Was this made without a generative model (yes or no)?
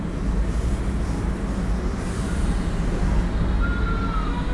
yes